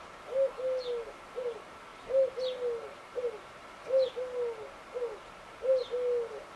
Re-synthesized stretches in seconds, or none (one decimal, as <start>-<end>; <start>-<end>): none